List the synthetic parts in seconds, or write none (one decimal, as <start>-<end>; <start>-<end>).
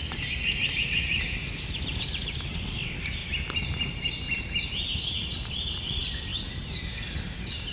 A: 0.0-3.2; 5.1-7.7